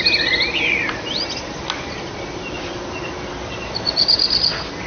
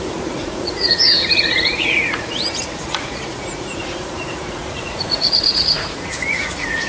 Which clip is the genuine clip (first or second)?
first